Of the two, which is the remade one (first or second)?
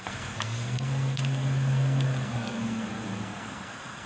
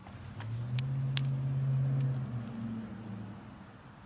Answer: first